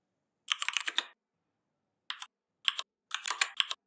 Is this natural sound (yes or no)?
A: yes